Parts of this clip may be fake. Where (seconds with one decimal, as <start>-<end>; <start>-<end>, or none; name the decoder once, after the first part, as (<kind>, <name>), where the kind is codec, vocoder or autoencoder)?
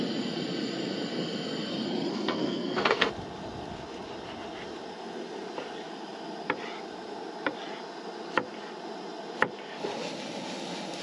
2.1-3.1 (codec, SNAC)